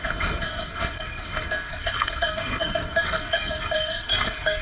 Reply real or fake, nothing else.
fake